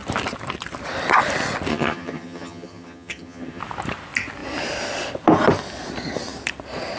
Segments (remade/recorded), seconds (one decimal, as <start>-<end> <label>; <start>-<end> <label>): 0.0-1.7 recorded; 1.7-3.6 remade; 3.6-7.0 recorded